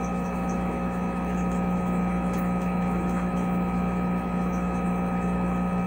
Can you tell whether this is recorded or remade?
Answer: remade